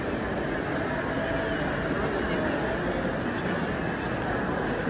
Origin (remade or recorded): recorded